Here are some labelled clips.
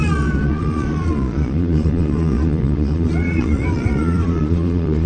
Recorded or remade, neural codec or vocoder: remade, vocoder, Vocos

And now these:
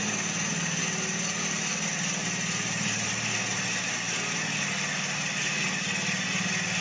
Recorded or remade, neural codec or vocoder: recorded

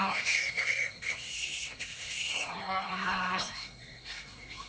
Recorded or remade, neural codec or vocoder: remade, codec, SNAC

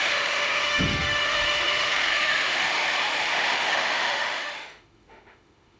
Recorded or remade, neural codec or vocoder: remade, autoencoder, DAC-VAE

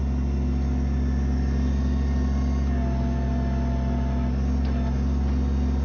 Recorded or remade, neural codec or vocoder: recorded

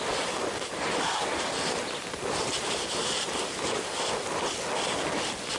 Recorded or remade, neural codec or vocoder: recorded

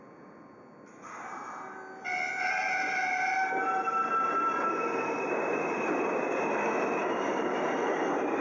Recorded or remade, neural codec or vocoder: recorded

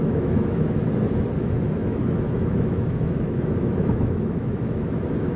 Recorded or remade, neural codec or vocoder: remade, autoencoder, DAC-VAE